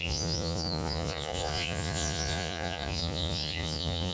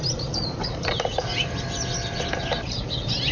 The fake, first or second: first